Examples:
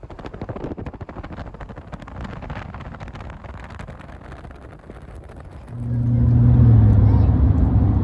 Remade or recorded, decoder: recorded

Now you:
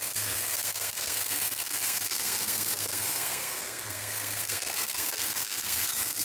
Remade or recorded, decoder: remade, codec, SNAC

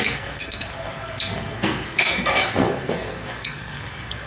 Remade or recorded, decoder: remade, codec, SNAC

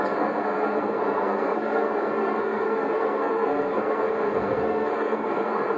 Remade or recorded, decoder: remade, codec, SNAC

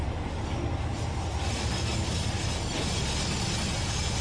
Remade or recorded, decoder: recorded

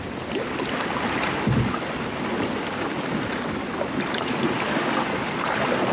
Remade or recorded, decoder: recorded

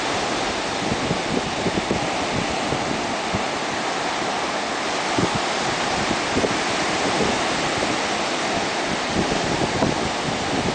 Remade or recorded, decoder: recorded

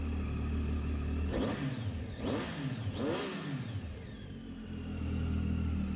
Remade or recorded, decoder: recorded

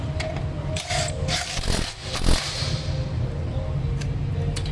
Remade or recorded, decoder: recorded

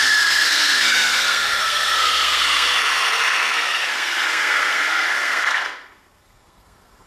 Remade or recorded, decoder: remade, codec, SNAC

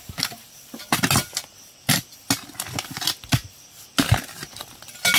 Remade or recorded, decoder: recorded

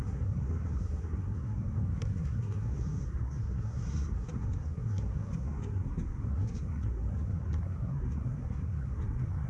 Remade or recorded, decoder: remade, codec, SNAC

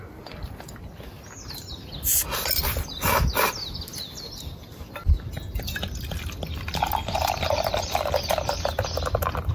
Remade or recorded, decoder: recorded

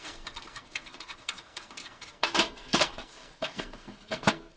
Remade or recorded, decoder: remade, codec, SNAC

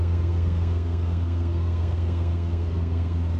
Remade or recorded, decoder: remade, codec, SNAC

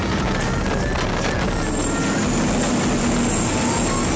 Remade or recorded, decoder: recorded